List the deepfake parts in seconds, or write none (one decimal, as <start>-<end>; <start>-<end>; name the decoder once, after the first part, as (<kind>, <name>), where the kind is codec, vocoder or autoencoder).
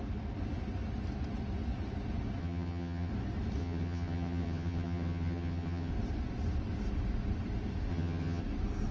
2.4-3.1 (vocoder, HiFi-GAN); 3.6-5.9; 7.9-8.4